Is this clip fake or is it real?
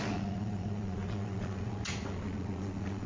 fake